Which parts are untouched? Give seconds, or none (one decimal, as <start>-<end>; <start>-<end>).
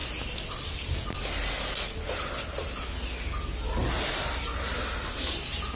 0.0-3.8; 4.4-5.8